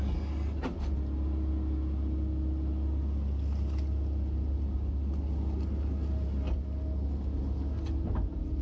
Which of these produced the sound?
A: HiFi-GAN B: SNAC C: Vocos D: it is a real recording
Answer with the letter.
D